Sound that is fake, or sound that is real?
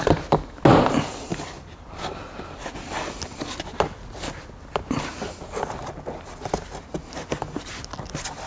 real